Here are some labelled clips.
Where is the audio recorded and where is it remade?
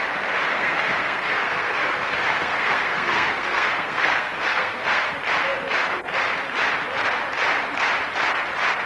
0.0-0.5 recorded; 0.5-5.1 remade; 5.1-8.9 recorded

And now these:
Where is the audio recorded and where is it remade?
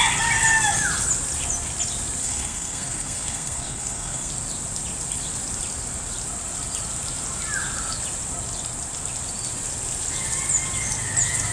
0.0-2.2 recorded; 2.2-4.3 remade; 4.3-11.5 recorded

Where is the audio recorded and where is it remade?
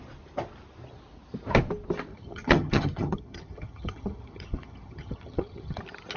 0.0-2.1 recorded; 2.1-5.8 remade; 5.8-6.2 recorded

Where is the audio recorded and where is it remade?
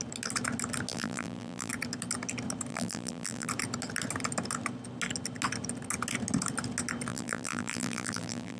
0.0-0.9 recorded; 0.9-1.7 remade; 1.7-2.7 recorded; 2.7-3.5 remade; 3.5-7.1 recorded; 7.1-8.6 remade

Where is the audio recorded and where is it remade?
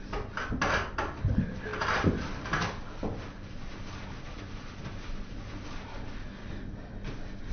0.0-1.7 recorded; 1.7-5.4 remade; 5.4-7.5 recorded